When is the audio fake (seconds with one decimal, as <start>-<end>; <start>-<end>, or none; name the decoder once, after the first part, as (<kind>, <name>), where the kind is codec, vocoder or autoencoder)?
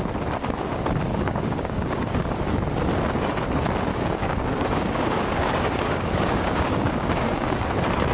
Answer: 1.1-2.4 (codec, DAC); 3.9-7.6